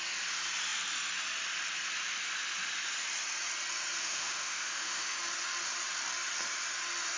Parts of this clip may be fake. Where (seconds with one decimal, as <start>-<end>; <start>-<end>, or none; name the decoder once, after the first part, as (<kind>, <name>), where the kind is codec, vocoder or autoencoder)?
4.0-5.2 (autoencoder, DAC-VAE)